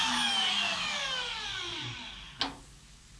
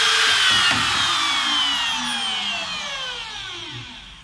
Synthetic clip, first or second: first